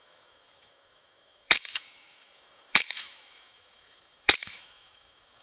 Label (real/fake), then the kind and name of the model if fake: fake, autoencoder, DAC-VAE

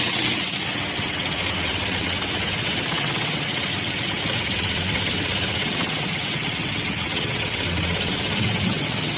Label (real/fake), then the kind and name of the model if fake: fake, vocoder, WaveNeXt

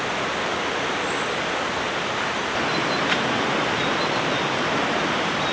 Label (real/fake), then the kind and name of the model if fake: real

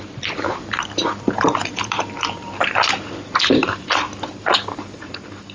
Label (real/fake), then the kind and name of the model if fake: fake, vocoder, BigVGAN v2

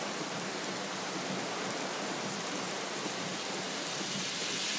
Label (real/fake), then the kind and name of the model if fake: real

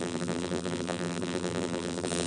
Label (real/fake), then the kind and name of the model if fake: fake, vocoder, BigVGAN v2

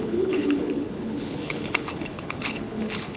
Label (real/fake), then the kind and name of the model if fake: fake, codec, HILCodec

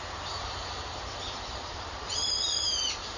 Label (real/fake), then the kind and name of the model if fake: fake, vocoder, BigVGAN v2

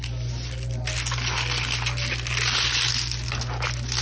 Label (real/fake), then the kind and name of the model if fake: real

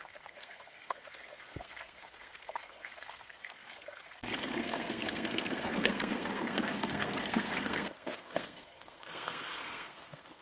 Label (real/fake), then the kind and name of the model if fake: fake, codec, SNAC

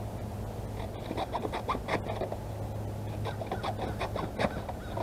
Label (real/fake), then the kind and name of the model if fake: real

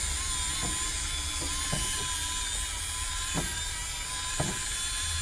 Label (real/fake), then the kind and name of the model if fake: real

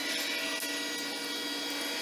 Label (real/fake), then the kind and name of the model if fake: real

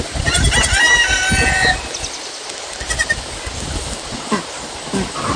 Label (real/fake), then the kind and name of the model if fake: real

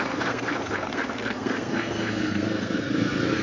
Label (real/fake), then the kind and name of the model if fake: fake, codec, SNAC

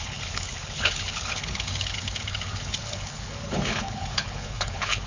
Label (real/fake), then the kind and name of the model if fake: fake, codec, HILCodec